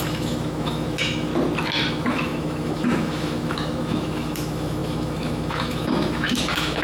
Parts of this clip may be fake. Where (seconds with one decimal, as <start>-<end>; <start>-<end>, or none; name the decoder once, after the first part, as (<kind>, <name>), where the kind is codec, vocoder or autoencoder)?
0.0-1.3 (autoencoder, DAC-VAE); 1.9-6.8